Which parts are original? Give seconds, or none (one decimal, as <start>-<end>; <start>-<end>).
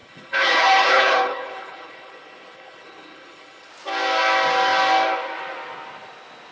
3.7-6.5